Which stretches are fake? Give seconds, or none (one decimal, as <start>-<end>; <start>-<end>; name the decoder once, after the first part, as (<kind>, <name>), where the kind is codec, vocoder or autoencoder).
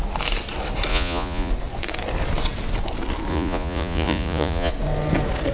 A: 0.9-1.5 (vocoder, Vocos); 3.3-4.7